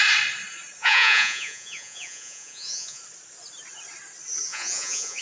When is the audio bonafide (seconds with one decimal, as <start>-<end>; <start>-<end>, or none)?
0.0-0.8; 3.0-4.5